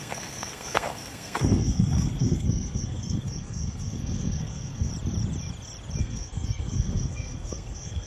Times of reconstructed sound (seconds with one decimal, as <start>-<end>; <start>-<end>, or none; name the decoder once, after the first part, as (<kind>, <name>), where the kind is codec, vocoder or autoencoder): 0.0-4.9 (codec, SNAC); 6.0-8.1